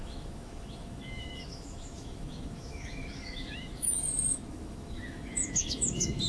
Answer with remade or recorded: remade